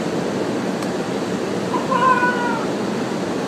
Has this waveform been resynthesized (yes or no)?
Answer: no